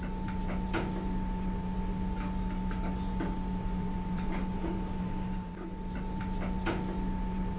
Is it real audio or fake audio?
real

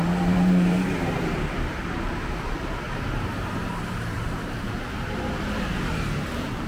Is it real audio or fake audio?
fake